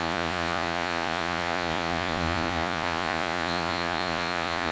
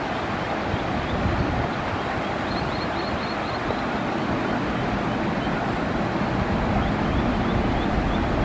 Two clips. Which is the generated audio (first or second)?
first